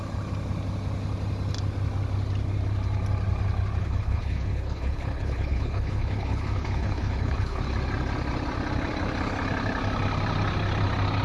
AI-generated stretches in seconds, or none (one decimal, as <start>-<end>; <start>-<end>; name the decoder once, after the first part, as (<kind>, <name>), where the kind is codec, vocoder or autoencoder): 3.8-7.6 (codec, HILCodec)